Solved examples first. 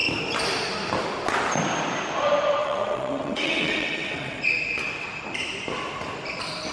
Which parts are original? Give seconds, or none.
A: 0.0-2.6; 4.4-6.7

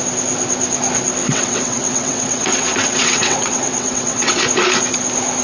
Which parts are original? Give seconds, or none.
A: 0.0-1.2; 4.4-5.4

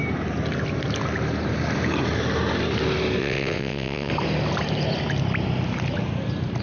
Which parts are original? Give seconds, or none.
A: 0.0-3.2; 4.1-6.6

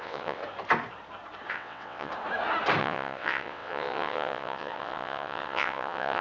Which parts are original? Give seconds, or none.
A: 0.4-1.5; 2.1-2.8